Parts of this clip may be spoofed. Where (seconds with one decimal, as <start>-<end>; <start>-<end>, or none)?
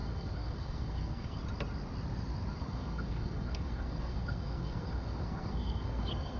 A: 0.0-1.4; 2.6-6.4